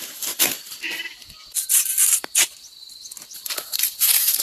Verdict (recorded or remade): recorded